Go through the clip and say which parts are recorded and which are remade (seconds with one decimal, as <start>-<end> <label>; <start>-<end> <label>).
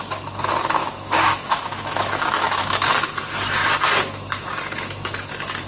0.0-0.8 recorded; 0.8-2.9 remade; 2.9-5.7 recorded